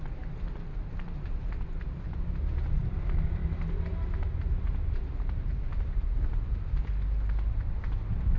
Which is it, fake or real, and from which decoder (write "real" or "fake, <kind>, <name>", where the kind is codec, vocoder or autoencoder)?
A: real